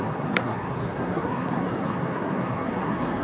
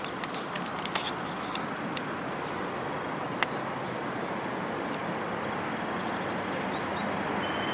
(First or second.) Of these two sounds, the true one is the second